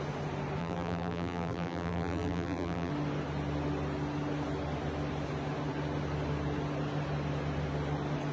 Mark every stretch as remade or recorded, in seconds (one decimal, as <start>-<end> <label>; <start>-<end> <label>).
0.0-0.6 recorded; 0.6-2.9 remade; 2.9-8.3 recorded